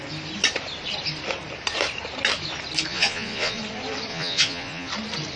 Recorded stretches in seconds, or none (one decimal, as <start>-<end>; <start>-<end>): 0.0-2.9; 3.6-4.1; 4.9-5.4